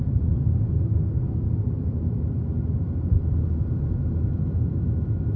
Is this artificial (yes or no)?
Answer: yes